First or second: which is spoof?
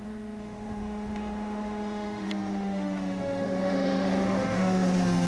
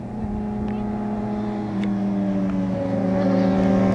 first